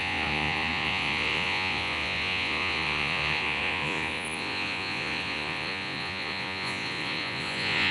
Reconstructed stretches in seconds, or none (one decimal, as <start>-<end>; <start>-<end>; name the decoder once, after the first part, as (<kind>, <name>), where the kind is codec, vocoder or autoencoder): 0.0-7.9 (vocoder, Vocos)